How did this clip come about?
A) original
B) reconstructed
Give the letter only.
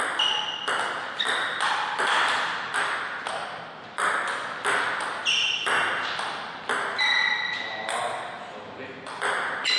A